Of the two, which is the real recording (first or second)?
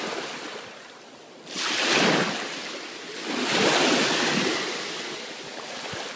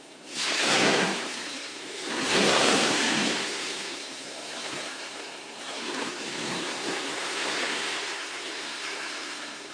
first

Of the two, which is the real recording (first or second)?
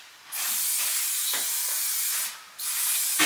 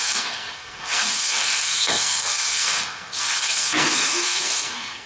first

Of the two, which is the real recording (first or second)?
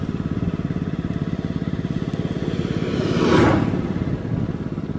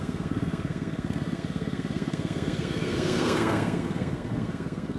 first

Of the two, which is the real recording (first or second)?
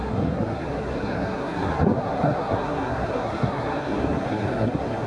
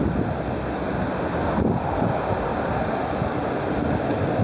second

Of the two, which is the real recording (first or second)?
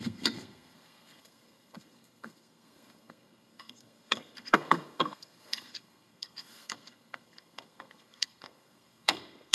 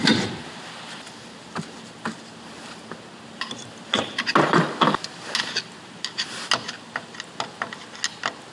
second